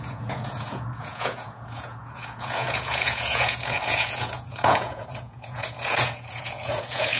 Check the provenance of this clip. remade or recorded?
remade